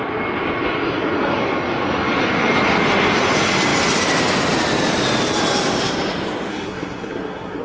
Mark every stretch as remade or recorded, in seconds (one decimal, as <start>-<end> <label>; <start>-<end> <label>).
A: 0.0-6.5 recorded; 6.5-7.6 remade